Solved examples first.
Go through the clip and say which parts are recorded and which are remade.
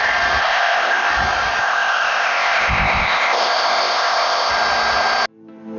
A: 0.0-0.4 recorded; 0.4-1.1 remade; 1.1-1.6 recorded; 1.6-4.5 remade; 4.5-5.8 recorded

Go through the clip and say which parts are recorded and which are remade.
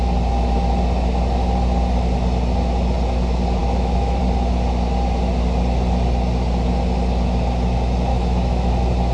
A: 0.0-3.6 recorded; 3.6-4.2 remade; 4.2-8.1 recorded; 8.1-8.7 remade; 8.7-9.1 recorded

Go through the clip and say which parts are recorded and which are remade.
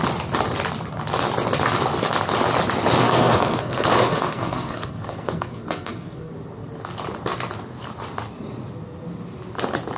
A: 0.0-3.0 recorded; 3.0-6.3 remade; 6.3-10.0 recorded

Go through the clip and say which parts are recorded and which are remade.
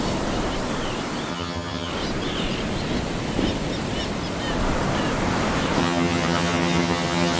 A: 0.0-1.3 recorded; 1.3-1.9 remade; 1.9-5.8 recorded; 5.8-7.4 remade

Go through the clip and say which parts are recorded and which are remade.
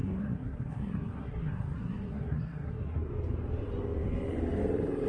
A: 0.0-3.1 remade; 3.1-5.1 recorded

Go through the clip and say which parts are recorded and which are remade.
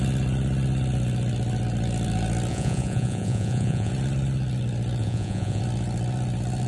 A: 0.0-2.5 recorded; 2.5-3.9 remade; 3.9-5.0 recorded; 5.0-5.6 remade; 5.6-6.7 recorded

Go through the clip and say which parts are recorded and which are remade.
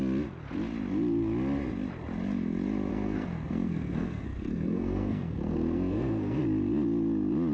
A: 0.0-2.9 recorded; 2.9-6.4 remade; 6.4-7.5 recorded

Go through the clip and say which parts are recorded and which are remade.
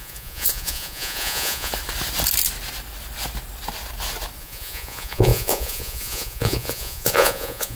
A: 0.0-1.7 remade; 1.7-4.4 recorded; 4.4-7.8 remade